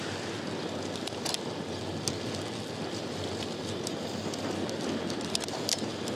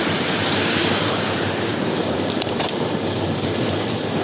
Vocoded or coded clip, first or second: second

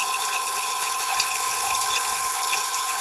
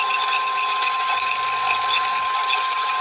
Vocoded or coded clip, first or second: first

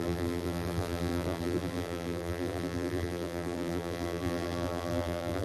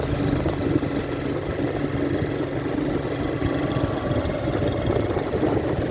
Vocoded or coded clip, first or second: first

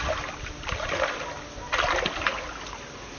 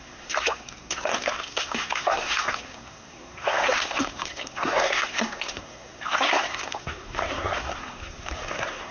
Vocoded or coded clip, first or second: second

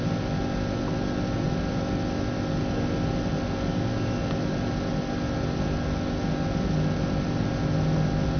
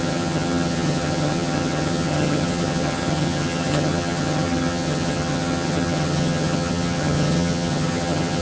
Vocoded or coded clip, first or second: second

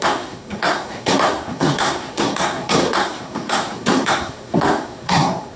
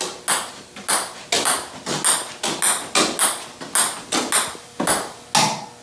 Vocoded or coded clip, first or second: first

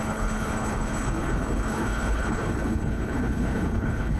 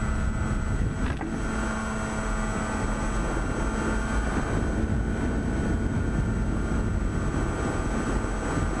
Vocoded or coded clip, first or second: first